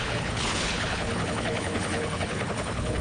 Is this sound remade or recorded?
remade